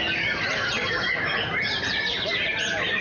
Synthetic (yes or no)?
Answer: no